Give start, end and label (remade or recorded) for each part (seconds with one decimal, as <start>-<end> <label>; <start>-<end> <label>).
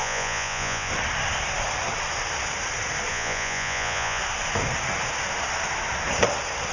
0.0-0.9 remade; 0.9-3.1 recorded; 3.1-4.2 remade; 4.2-6.7 recorded